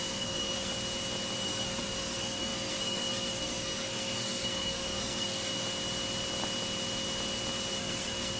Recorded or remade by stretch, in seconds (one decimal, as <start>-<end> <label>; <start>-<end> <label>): 0.0-0.7 remade; 0.7-1.4 recorded; 1.4-5.5 remade; 5.5-7.7 recorded; 7.7-8.4 remade